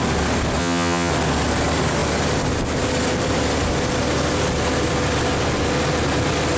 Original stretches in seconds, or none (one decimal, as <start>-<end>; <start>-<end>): 0.0-0.6; 1.1-6.6